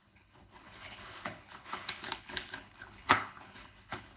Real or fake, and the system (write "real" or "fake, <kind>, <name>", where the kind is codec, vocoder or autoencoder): fake, codec, HILCodec